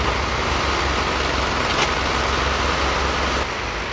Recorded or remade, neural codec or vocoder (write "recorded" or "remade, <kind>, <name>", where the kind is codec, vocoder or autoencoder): recorded